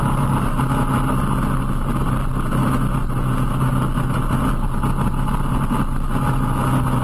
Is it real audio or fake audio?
real